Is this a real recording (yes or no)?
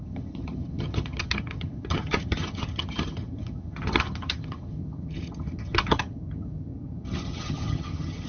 no